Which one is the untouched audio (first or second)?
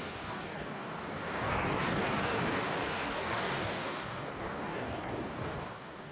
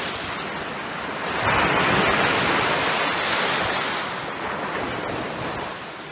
second